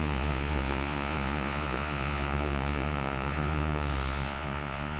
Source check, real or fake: fake